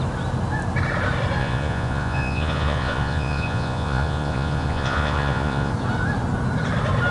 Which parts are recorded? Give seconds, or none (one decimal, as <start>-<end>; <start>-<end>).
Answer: 0.0-1.4; 5.7-7.1